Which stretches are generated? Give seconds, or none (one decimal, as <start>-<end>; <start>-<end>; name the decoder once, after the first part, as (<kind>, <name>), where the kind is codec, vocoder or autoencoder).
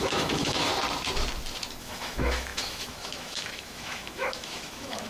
0.0-0.7 (autoencoder, DAC-VAE); 1.8-5.1